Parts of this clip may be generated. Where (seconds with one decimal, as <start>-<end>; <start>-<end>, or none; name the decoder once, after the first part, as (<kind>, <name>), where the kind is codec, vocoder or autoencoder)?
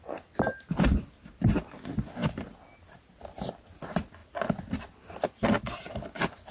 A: none